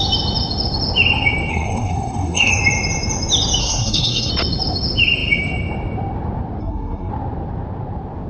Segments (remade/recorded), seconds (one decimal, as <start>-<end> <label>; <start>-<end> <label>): 0.0-1.5 recorded; 1.5-2.5 remade; 2.5-3.6 recorded; 3.6-4.3 remade; 4.3-6.6 recorded; 6.6-7.1 remade; 7.1-8.3 recorded